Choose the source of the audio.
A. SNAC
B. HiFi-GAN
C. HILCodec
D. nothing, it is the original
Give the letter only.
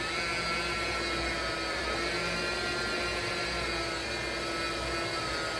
D